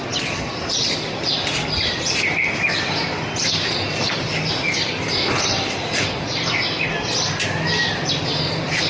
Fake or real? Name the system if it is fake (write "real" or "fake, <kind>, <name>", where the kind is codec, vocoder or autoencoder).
fake, vocoder, BigVGAN v2